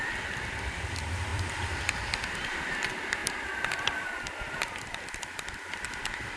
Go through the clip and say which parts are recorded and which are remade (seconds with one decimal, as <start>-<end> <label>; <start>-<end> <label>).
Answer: 0.0-6.4 recorded